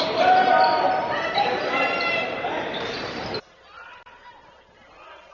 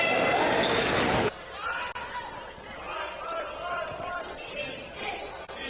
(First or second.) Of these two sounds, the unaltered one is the second